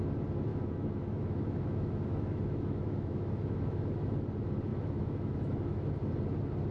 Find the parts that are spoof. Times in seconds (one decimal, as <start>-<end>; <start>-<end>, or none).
0.5-4.1; 4.7-5.9